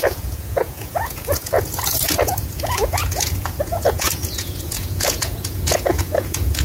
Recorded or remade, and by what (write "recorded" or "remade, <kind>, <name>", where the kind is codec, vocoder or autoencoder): remade, vocoder, Vocos